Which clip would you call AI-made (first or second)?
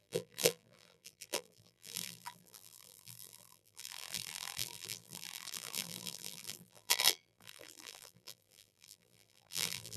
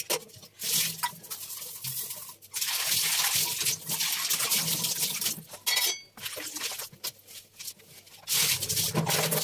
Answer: first